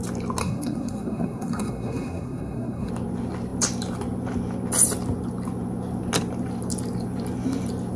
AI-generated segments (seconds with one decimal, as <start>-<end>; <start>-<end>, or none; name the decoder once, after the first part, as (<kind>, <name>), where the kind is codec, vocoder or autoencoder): 0.4-2.9 (codec, SNAC)